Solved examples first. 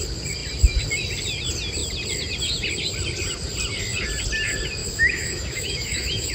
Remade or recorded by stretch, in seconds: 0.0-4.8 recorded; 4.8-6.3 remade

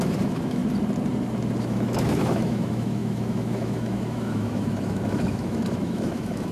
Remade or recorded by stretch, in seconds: 0.0-0.6 remade; 0.6-1.6 recorded; 1.6-6.5 remade

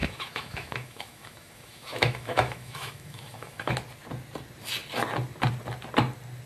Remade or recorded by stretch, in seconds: 0.0-3.7 remade; 3.7-6.5 recorded

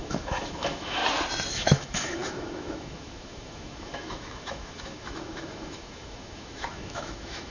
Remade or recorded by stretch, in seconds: 0.0-1.0 remade; 1.0-1.5 recorded; 1.5-7.5 remade

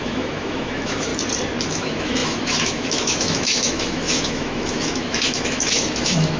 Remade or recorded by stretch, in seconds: 0.0-1.1 remade; 1.1-1.7 recorded; 1.7-6.4 remade

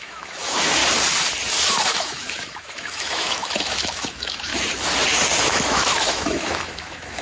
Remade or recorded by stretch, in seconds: 0.0-0.8 remade; 0.8-1.7 recorded; 1.7-4.5 remade; 4.5-5.4 recorded; 5.4-7.2 remade